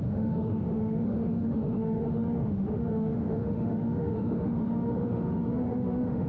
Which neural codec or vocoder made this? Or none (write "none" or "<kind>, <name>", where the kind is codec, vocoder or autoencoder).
autoencoder, DAC-VAE